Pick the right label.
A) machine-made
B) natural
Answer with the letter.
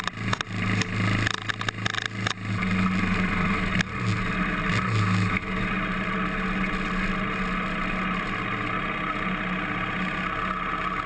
B